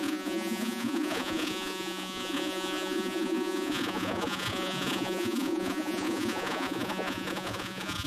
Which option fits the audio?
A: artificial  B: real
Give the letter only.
A